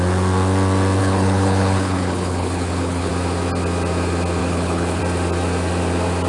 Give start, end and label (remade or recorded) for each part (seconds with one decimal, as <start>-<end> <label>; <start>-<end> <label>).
0.0-1.0 recorded; 1.0-3.1 remade; 3.1-4.4 recorded; 4.4-5.0 remade; 5.0-6.3 recorded